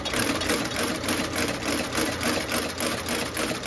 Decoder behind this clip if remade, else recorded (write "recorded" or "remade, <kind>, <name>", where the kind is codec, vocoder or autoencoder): recorded